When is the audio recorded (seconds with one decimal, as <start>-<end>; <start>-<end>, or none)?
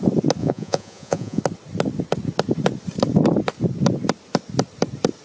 0.0-0.4; 1.4-5.2